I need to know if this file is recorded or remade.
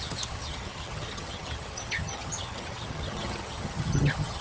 remade